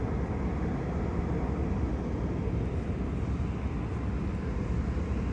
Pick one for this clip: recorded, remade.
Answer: recorded